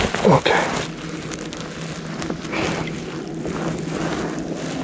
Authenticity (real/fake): real